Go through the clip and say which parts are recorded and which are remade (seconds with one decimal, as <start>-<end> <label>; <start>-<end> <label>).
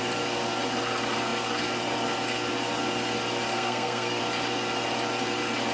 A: 0.0-3.5 recorded; 3.5-4.2 remade; 4.2-5.7 recorded